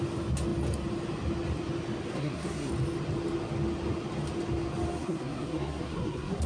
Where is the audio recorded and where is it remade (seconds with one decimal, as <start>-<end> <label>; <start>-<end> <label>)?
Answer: 0.0-2.1 recorded; 2.1-2.7 remade; 2.7-5.0 recorded; 5.0-6.5 remade